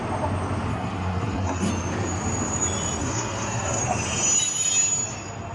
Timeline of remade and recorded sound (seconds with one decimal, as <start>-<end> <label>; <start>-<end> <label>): 0.0-0.7 recorded; 0.7-1.7 remade; 1.7-3.0 recorded; 3.0-3.8 remade; 3.8-5.5 recorded